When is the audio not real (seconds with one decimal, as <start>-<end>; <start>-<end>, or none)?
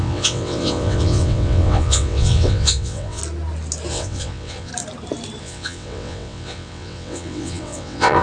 0.0-3.2; 3.9-4.7; 5.4-8.2